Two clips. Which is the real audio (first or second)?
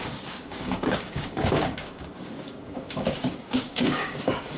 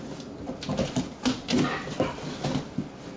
second